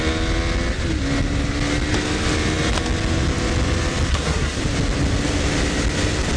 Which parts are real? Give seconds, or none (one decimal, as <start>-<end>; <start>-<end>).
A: 0.0-4.1; 4.6-6.4